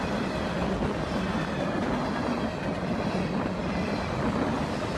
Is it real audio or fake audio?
real